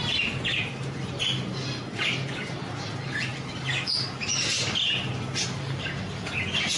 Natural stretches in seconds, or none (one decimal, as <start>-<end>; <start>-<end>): 0.0-6.8